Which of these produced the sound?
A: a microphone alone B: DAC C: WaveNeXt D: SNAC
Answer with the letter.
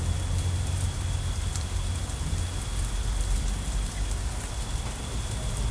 A